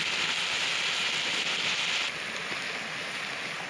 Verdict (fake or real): real